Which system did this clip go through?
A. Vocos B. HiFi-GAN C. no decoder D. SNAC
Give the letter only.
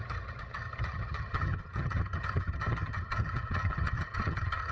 B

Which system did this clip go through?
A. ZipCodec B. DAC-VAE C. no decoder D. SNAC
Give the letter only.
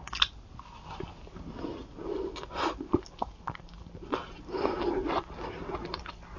C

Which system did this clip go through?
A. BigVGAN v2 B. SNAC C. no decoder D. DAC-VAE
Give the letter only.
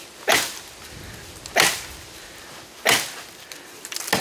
C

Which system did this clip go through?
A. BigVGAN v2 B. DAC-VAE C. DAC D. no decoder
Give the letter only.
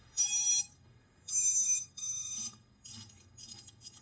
C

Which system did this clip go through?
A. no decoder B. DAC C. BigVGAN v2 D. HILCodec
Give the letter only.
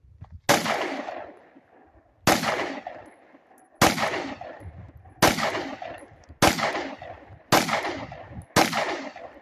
A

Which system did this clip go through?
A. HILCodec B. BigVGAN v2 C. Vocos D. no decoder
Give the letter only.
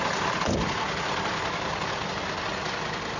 D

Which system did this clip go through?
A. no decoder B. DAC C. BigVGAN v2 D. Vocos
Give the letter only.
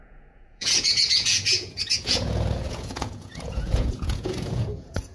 D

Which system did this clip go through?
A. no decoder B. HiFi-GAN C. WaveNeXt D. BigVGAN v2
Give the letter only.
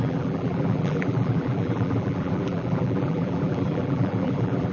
D